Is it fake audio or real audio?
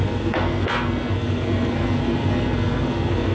fake